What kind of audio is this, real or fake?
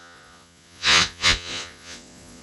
fake